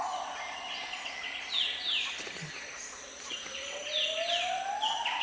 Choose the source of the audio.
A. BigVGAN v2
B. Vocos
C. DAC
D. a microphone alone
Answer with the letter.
D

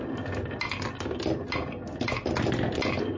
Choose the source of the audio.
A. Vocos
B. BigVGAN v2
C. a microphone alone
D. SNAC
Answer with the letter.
C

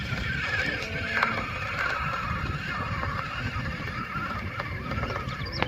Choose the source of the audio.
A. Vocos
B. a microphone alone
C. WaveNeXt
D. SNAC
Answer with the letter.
B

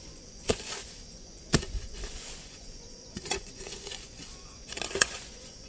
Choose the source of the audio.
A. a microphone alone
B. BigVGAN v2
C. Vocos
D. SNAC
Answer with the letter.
C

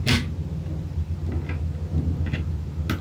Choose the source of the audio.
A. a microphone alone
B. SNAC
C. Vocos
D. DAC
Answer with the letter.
A